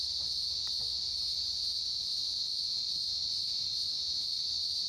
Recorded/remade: recorded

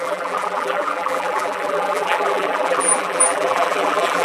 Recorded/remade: remade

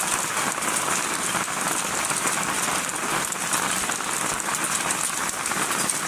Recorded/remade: recorded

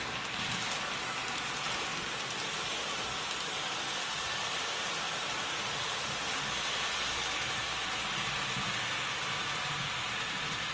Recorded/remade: recorded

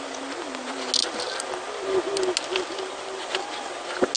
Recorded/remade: recorded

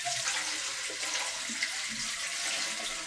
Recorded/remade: recorded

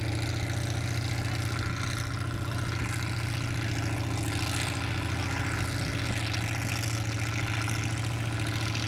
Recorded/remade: recorded